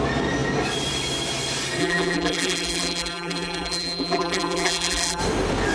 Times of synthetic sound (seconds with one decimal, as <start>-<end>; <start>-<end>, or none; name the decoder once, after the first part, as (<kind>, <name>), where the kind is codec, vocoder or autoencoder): 1.8-5.2 (vocoder, BigVGAN v2)